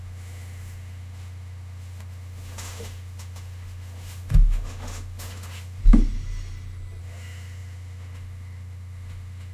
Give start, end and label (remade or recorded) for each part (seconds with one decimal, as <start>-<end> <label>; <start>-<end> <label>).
0.0-5.8 remade; 5.8-7.0 recorded; 7.0-9.5 remade